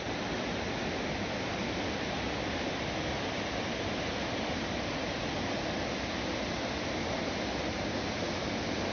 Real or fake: real